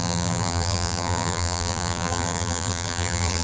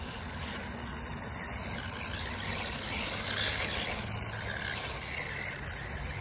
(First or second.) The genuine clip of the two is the second